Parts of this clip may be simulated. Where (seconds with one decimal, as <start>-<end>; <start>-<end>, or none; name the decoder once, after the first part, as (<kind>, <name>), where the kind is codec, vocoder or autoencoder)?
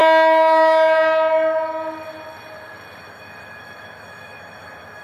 3.0-5.0 (autoencoder, DAC-VAE)